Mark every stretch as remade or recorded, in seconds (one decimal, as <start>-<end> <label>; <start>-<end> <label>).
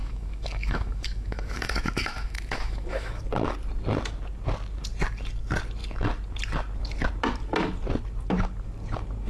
0.0-3.2 remade; 3.2-9.3 recorded